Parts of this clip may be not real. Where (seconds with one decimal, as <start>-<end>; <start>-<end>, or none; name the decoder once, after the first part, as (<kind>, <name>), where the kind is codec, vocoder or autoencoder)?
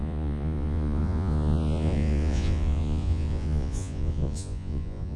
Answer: 0.0-5.2 (vocoder, Vocos)